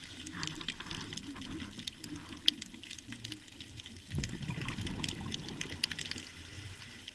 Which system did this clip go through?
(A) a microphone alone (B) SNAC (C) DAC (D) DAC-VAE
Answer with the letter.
A